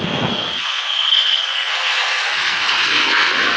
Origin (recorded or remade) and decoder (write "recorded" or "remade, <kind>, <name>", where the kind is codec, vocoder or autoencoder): remade, codec, SNAC